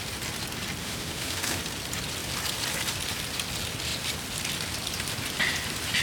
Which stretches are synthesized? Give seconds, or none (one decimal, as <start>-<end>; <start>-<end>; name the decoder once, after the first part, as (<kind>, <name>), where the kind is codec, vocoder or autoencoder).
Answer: 0.8-1.6 (autoencoder, DAC-VAE)